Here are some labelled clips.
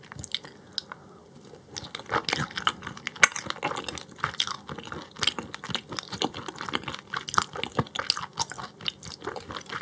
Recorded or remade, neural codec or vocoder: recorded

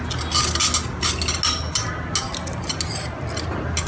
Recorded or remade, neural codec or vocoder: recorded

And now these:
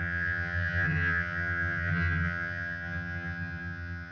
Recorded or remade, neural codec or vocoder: remade, vocoder, HiFi-GAN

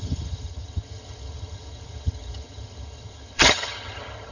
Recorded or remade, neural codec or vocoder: remade, vocoder, HiFi-GAN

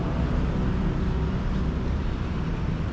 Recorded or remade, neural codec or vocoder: recorded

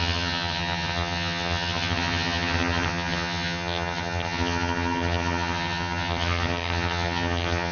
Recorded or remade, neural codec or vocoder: remade, vocoder, HiFi-GAN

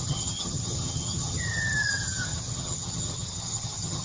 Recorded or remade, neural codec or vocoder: remade, vocoder, HiFi-GAN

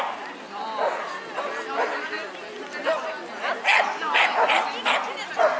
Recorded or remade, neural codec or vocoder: recorded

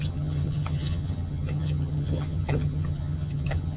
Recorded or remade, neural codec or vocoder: remade, vocoder, HiFi-GAN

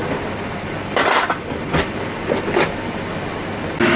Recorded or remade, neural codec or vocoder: recorded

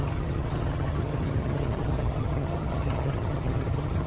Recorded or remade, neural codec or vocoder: remade, vocoder, HiFi-GAN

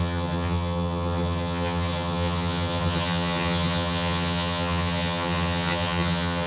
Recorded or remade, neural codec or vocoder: remade, vocoder, HiFi-GAN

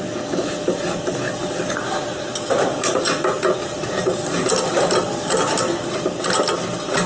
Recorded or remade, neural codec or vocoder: recorded